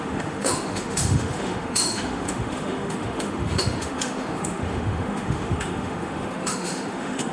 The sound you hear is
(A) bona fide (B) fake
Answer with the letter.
B